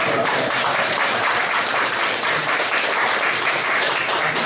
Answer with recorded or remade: remade